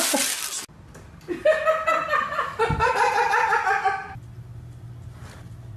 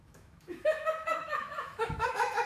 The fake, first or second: second